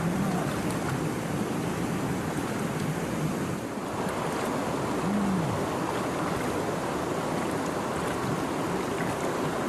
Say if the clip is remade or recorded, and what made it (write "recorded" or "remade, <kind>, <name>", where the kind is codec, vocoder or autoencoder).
recorded